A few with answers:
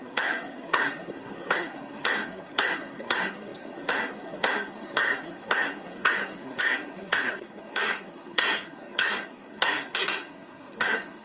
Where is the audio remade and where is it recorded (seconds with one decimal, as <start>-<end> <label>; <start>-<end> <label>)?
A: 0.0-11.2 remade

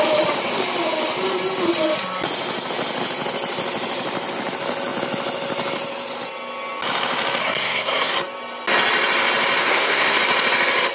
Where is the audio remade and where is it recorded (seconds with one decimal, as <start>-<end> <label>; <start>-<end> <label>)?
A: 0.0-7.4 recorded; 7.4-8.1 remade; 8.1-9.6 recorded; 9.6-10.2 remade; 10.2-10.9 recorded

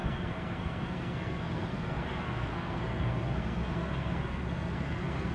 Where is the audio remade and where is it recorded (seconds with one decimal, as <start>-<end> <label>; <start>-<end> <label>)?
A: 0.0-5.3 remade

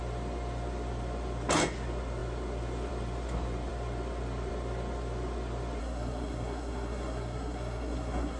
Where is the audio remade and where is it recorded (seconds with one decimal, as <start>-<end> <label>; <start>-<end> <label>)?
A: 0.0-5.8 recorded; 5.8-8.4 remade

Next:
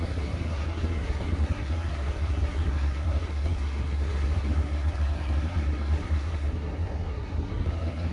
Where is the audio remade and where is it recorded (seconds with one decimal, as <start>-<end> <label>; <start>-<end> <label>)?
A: 0.0-8.1 remade

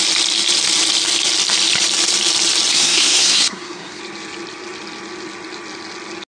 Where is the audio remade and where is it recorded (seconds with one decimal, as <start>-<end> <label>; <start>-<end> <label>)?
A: 0.0-2.7 recorded; 2.7-4.0 remade; 4.0-6.3 recorded

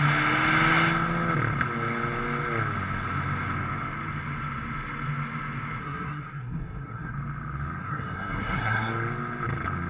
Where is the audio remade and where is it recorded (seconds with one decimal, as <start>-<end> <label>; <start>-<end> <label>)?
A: 0.0-5.8 recorded; 5.8-7.1 remade; 7.1-7.8 recorded; 7.8-8.9 remade; 8.9-9.9 recorded

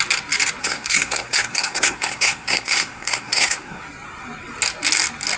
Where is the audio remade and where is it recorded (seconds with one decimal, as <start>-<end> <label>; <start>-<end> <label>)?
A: 0.0-0.6 recorded; 0.6-3.8 remade; 3.8-5.4 recorded